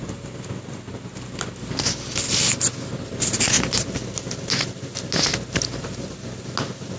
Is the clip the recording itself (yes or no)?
yes